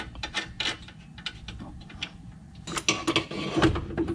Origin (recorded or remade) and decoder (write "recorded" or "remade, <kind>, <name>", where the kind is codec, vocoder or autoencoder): recorded